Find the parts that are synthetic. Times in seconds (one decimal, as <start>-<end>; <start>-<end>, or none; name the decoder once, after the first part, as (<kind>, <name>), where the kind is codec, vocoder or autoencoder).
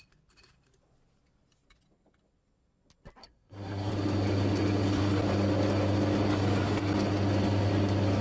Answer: 3.2-3.9 (codec, SNAC)